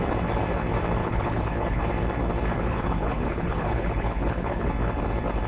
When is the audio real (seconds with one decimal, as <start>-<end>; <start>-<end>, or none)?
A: 0.0-1.0; 1.8-2.5; 4.7-5.5